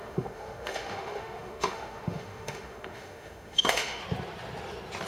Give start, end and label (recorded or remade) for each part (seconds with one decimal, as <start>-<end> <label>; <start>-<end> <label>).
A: 0.0-4.0 remade; 4.0-5.1 recorded